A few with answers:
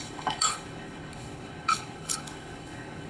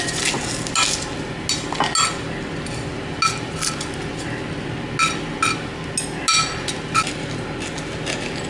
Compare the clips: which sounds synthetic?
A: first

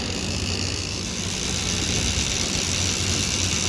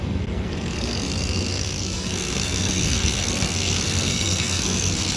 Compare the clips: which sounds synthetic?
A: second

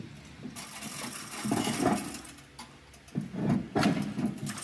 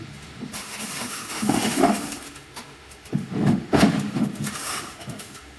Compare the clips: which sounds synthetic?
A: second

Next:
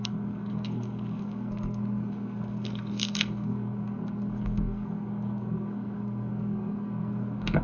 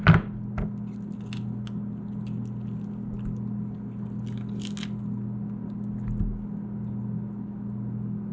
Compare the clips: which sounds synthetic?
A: first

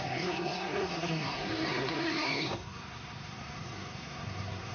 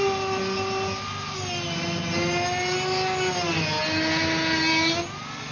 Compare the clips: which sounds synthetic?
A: first